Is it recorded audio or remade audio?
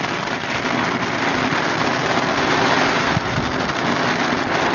recorded